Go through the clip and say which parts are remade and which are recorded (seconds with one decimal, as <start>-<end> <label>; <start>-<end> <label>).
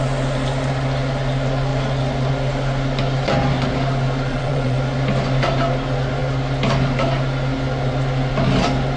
0.0-4.3 recorded; 4.3-4.8 remade; 4.8-9.0 recorded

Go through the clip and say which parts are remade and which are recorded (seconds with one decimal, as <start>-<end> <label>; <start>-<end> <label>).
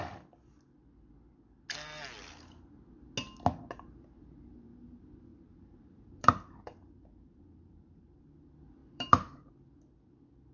0.0-5.3 recorded; 5.3-8.2 remade; 8.2-8.8 recorded; 8.8-9.5 remade; 9.5-10.5 recorded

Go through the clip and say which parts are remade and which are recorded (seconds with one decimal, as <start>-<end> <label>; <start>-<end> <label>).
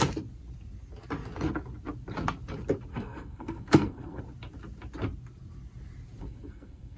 0.0-2.9 recorded; 2.9-4.2 remade; 4.2-6.2 recorded; 6.2-7.0 remade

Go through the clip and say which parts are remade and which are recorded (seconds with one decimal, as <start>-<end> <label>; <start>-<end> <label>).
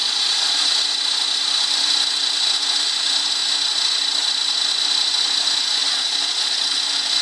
0.0-0.6 remade; 0.6-5.8 recorded; 5.8-6.8 remade; 6.8-7.2 recorded